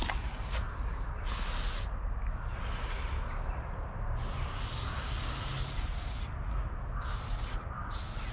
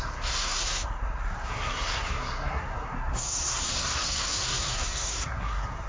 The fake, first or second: second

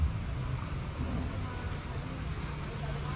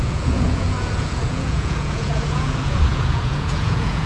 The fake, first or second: second